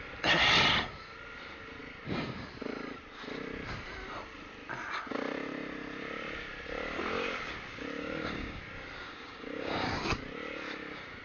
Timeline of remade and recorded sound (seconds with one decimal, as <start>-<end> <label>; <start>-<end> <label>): 0.0-8.0 recorded; 8.0-8.6 remade; 8.6-9.0 recorded; 9.0-10.0 remade; 10.0-11.2 recorded